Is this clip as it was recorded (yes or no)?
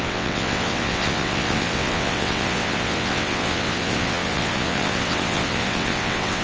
no